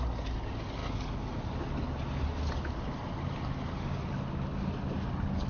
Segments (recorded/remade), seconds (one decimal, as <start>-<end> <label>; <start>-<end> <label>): 0.0-5.5 recorded